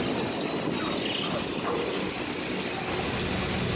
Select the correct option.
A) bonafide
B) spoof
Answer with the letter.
A